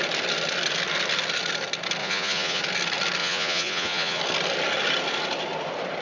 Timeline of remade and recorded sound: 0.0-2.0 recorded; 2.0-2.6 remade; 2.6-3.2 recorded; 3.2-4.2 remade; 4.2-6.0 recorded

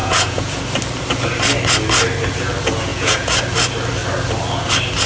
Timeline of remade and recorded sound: 0.0-0.6 remade; 0.6-2.9 recorded; 2.9-3.4 remade; 3.4-5.1 recorded

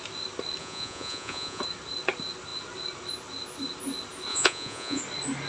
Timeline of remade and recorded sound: 0.0-0.6 recorded; 0.6-1.6 remade; 1.6-4.3 recorded; 4.3-5.0 remade; 5.0-5.5 recorded

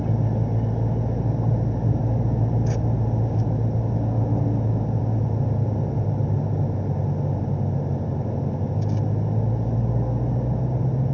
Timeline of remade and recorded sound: 0.0-11.1 recorded